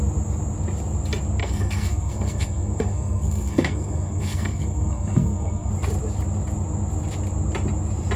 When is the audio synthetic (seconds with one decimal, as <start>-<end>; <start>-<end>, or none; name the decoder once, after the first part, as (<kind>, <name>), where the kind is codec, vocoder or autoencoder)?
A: 1.4-5.7 (codec, SNAC)